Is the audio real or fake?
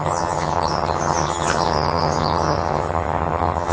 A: fake